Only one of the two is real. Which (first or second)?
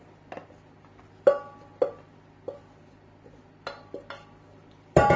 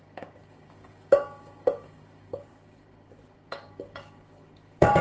first